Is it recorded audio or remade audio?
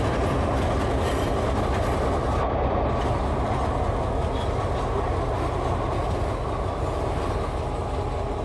recorded